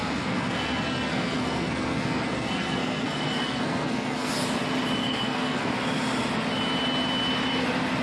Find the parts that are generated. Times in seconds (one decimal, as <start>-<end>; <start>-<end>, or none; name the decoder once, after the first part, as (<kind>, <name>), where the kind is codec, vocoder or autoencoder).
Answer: 0.0-4.3 (codec, SNAC); 5.0-5.7